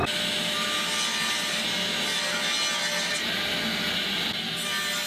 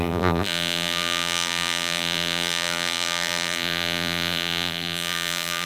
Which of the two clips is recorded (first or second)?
first